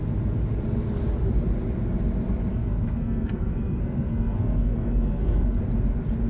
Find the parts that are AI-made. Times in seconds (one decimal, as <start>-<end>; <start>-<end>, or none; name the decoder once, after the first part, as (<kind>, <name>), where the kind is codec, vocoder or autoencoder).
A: 2.5-5.6 (codec, SNAC)